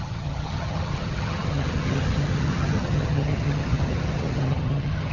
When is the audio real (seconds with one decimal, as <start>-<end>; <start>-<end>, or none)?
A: none